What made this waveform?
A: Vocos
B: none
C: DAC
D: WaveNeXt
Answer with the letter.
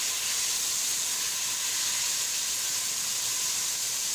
B